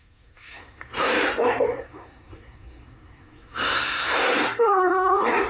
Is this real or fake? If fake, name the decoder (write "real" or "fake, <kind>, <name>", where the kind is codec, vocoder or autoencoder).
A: fake, codec, SNAC